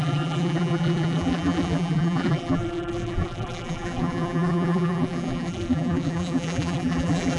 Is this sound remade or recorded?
remade